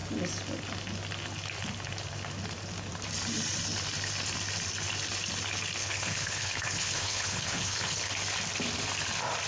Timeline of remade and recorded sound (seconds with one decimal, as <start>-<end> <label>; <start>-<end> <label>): 0.0-5.8 recorded; 5.8-8.1 remade; 8.1-9.5 recorded